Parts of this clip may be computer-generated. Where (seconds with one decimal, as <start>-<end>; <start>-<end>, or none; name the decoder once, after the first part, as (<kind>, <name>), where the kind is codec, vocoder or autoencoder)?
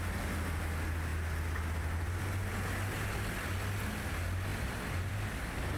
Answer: 4.5-5.1 (vocoder, BigVGAN v2)